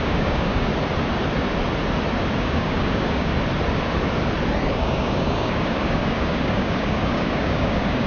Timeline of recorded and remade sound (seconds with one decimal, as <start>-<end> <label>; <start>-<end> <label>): 0.0-0.7 remade; 0.7-2.4 recorded; 2.4-3.3 remade; 3.3-4.7 recorded; 4.7-8.1 remade